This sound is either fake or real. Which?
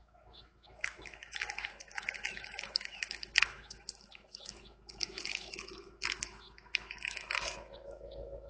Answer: fake